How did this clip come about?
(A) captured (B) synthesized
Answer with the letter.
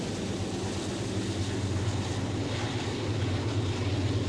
A